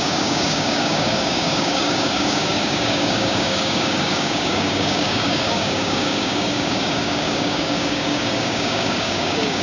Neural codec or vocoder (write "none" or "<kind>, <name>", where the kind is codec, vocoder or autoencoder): codec, DAC